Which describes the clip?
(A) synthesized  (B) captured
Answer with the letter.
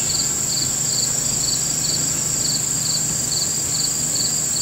B